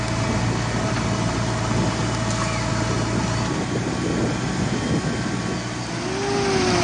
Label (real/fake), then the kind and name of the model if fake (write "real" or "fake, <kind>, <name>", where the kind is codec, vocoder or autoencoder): real